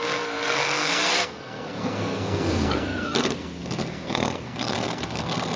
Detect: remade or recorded remade